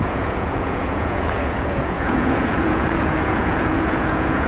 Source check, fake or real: fake